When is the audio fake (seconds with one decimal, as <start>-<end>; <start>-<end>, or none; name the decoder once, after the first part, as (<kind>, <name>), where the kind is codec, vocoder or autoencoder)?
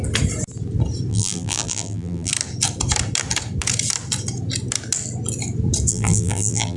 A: 1.1-2.3 (vocoder, BigVGAN v2); 5.9-6.8